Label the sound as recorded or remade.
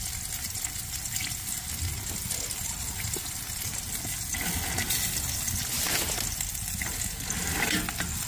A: recorded